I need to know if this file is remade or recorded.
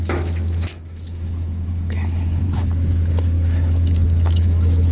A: remade